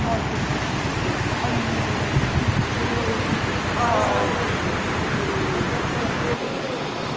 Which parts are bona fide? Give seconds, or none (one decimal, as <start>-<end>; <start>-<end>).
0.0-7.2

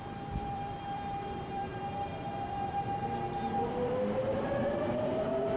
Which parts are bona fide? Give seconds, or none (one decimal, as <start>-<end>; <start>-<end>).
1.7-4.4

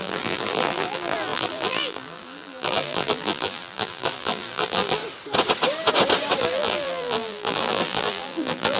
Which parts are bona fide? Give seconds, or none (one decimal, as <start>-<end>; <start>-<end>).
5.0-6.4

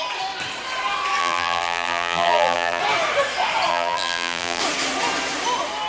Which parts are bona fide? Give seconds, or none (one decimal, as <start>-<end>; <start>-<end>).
0.0-1.2; 2.8-3.7; 4.6-5.9

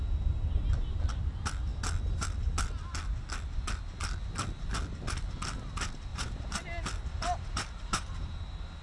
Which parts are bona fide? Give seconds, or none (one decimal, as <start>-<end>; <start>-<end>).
0.0-6.1; 6.6-7.1

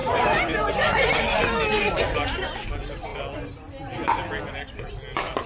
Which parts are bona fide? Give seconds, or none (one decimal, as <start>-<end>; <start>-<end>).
1.2-5.5

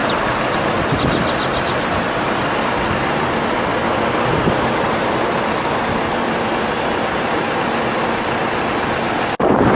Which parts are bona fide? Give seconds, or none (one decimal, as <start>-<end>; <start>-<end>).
2.9-9.7